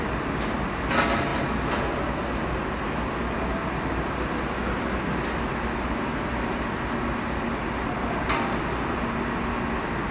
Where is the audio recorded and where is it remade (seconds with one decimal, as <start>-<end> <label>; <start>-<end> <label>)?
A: 0.0-10.1 recorded